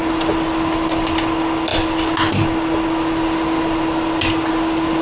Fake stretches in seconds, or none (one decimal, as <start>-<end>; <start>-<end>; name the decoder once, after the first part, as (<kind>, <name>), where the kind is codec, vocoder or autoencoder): none